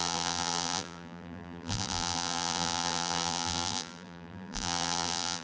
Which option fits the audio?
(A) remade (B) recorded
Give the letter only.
A